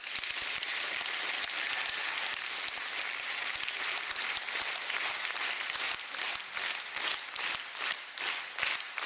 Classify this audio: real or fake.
real